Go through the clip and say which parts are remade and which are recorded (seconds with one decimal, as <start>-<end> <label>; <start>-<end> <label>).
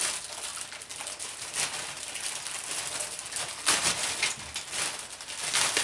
0.0-5.8 recorded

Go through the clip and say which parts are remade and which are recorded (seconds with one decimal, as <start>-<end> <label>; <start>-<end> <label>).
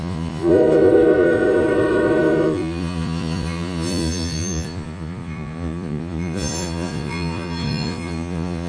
0.0-8.7 remade